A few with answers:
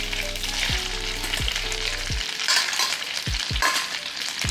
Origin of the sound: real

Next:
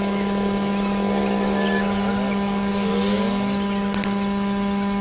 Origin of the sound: real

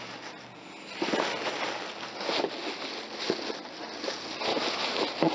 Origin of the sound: real